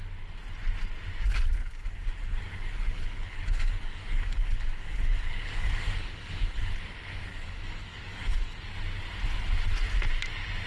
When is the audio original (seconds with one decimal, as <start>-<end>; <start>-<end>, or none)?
0.0-1.6; 6.7-7.3; 8.6-10.7